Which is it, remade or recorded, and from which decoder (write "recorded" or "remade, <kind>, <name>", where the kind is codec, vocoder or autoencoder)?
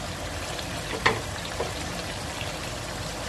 recorded